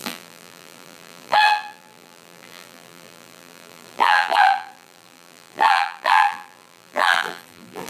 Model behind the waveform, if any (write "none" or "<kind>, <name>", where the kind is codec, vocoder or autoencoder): vocoder, BigVGAN v2